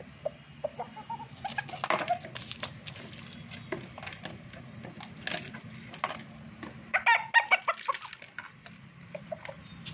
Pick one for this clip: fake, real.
real